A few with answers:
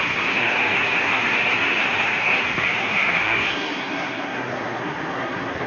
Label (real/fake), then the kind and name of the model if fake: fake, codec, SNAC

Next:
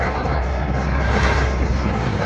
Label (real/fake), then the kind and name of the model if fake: fake, codec, SNAC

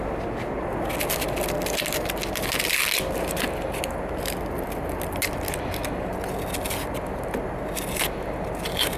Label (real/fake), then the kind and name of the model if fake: real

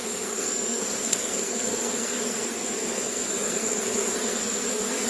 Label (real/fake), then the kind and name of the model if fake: fake, codec, SNAC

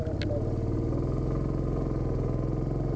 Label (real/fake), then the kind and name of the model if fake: real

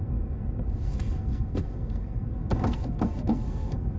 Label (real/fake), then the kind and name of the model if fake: fake, codec, SNAC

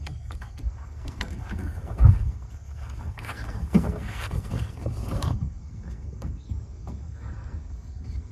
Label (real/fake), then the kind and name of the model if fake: fake, codec, SNAC